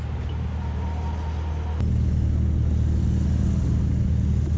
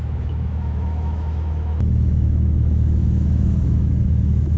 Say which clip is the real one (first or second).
first